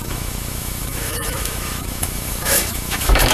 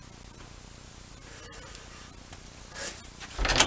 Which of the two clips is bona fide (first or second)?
second